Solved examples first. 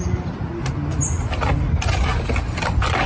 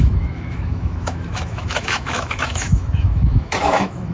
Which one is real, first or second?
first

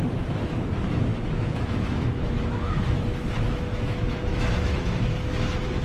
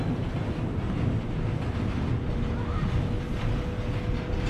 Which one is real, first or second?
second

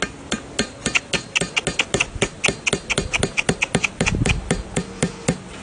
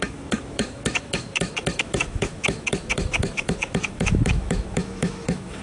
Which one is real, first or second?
first